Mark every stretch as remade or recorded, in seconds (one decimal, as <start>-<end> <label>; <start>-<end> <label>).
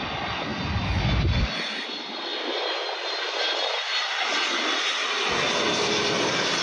0.0-6.6 recorded